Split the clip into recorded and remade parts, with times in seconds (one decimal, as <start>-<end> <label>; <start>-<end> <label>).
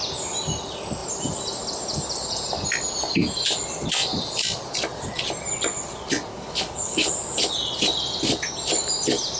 0.0-6.3 recorded; 6.3-7.1 remade; 7.1-9.4 recorded